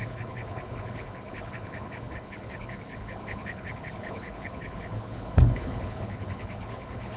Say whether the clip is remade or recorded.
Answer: remade